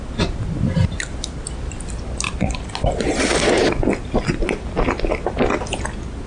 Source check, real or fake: real